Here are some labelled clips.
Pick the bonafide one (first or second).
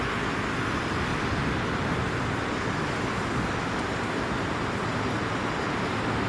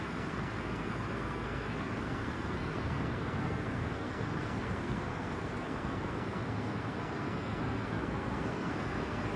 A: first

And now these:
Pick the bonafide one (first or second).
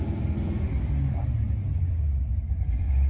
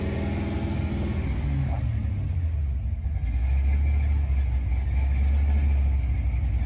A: second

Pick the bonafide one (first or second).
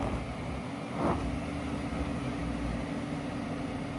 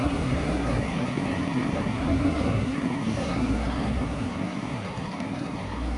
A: first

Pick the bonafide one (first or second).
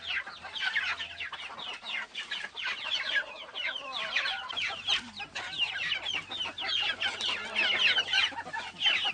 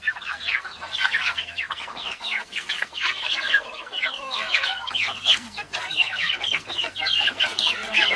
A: first